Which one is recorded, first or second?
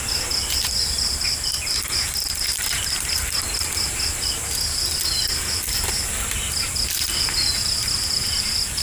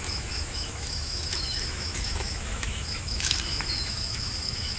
first